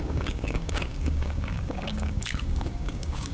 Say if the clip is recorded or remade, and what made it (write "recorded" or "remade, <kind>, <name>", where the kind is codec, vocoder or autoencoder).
remade, codec, DAC